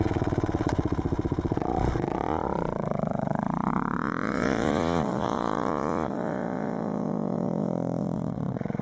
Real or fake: fake